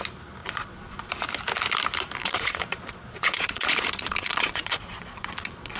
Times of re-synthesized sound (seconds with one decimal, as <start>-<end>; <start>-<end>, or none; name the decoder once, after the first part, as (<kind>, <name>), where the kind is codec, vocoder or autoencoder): 0.4-1.1 (vocoder, Vocos); 2.2-5.8